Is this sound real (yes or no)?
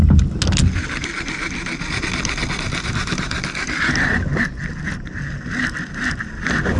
yes